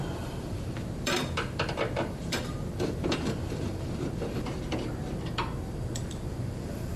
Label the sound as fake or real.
fake